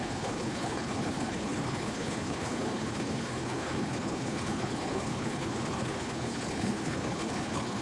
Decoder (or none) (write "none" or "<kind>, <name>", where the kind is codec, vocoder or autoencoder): codec, HILCodec